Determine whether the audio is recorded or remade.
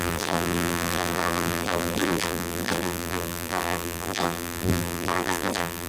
remade